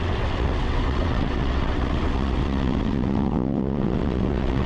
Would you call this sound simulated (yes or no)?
yes